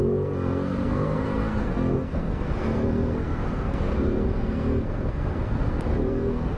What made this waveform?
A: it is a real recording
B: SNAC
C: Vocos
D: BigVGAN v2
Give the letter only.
B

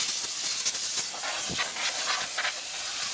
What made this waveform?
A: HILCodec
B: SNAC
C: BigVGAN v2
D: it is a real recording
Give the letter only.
D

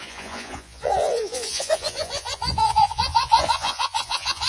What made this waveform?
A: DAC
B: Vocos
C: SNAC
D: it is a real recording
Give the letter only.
B